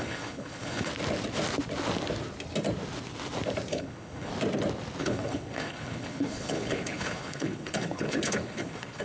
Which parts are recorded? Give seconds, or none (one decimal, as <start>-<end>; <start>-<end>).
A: 0.9-3.7; 4.3-5.0